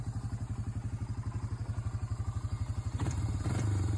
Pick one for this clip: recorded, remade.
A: recorded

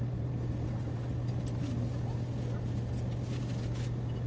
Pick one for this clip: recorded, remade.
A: recorded